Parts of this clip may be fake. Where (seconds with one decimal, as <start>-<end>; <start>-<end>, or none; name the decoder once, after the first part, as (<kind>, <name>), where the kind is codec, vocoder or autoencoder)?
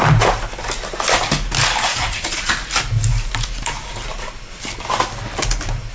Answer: 1.9-2.5 (vocoder, Vocos)